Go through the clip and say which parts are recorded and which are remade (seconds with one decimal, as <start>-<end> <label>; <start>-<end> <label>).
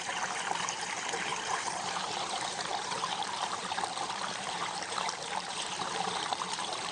0.0-6.9 remade